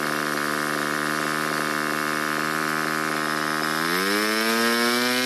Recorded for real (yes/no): yes